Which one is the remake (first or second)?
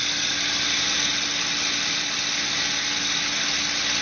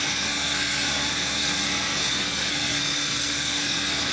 second